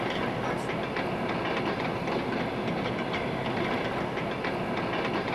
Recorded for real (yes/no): yes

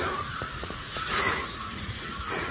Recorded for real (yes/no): no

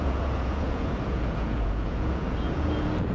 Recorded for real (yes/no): no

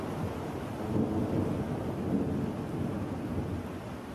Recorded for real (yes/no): yes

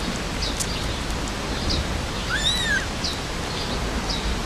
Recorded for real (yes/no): yes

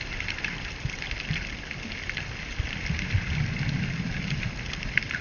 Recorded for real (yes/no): yes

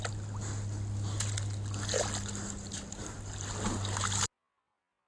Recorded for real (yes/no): yes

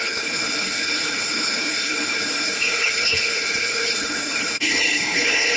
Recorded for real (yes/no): no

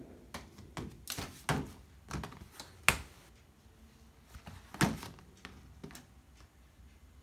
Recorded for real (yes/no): yes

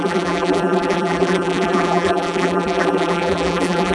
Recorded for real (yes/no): no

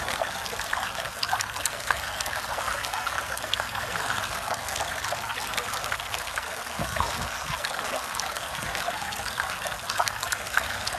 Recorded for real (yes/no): no